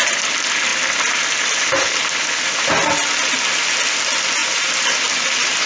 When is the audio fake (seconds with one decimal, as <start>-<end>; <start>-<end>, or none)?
none